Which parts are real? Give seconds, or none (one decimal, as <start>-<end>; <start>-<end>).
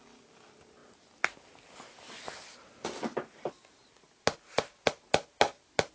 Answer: 0.0-5.9